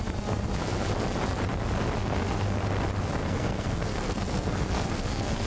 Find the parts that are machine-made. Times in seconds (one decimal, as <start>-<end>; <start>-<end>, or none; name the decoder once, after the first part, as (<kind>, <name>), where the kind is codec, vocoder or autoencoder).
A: 2.0-2.6 (codec, SNAC); 3.2-5.5